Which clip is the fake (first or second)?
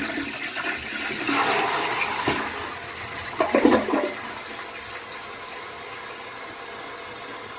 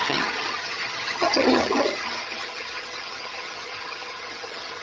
second